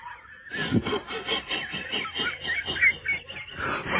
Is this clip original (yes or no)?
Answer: yes